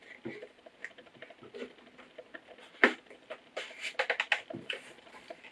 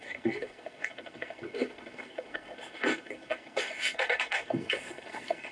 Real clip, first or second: first